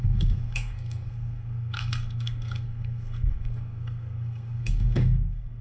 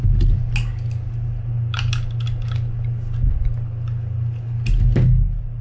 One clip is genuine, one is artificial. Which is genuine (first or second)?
second